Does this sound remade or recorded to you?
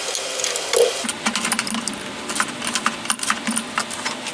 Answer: recorded